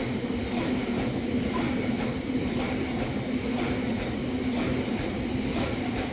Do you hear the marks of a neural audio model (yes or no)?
no